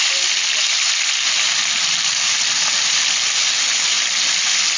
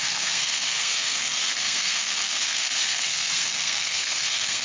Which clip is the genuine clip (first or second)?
first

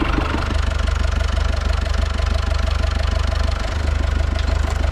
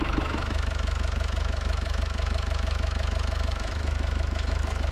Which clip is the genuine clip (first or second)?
first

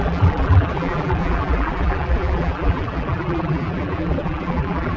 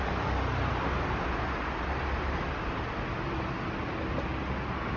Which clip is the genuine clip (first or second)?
second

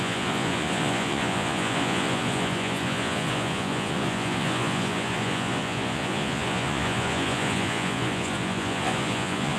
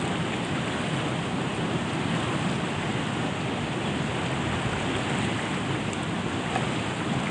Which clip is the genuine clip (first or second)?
second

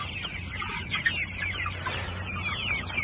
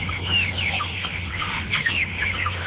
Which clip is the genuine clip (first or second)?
first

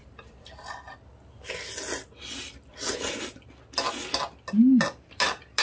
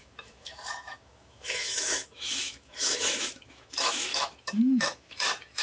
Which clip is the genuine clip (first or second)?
first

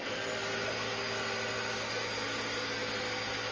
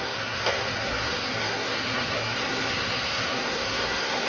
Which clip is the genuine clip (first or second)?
first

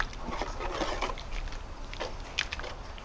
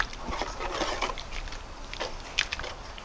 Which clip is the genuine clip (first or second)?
first